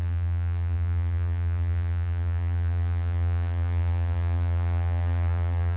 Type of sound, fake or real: fake